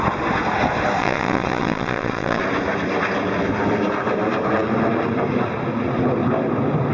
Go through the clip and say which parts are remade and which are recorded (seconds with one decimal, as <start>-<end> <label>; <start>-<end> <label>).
0.0-1.0 recorded; 1.0-2.4 remade; 2.4-6.9 recorded